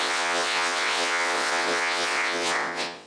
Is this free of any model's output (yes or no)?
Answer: no